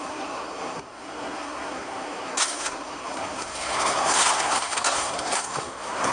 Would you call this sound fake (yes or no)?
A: yes